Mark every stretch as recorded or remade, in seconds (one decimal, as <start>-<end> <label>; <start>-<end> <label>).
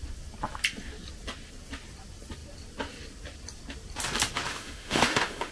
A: 0.0-4.5 recorded; 4.5-5.5 remade